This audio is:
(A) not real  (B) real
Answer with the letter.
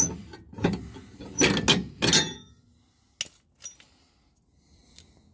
B